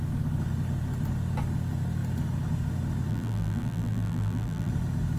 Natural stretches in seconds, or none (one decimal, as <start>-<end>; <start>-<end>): 0.0-3.1; 4.7-5.2